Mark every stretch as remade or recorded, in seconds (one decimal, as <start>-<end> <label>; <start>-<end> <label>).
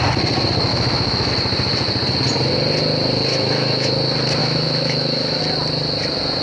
0.0-0.7 recorded; 0.7-1.3 remade; 1.3-3.3 recorded; 3.3-3.9 remade; 3.9-4.4 recorded; 4.4-5.4 remade; 5.4-6.4 recorded